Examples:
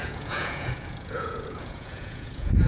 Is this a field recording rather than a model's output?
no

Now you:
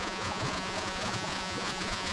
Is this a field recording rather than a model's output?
no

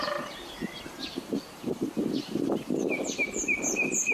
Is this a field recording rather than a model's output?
no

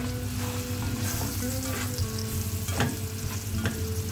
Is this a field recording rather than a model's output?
yes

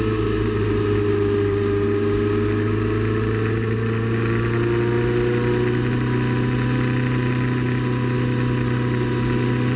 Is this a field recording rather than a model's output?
yes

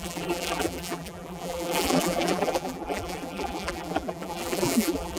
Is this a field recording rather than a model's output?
no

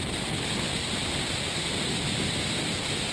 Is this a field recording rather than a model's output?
yes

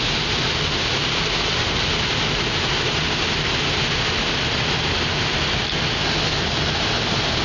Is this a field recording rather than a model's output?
yes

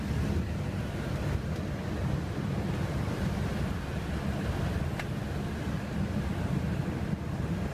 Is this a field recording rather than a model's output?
yes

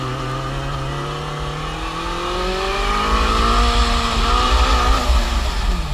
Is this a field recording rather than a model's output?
yes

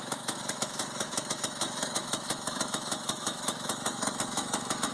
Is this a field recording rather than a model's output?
no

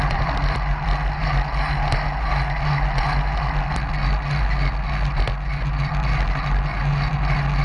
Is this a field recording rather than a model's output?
yes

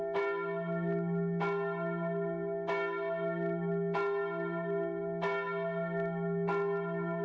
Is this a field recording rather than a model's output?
yes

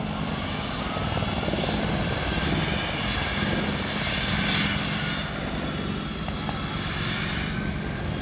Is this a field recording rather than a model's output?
yes